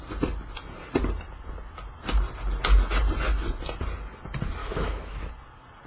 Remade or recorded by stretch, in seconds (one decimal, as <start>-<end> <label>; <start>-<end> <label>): 0.0-4.6 recorded; 4.6-5.3 remade; 5.3-5.9 recorded